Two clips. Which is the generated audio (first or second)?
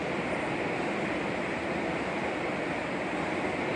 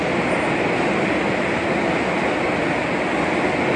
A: first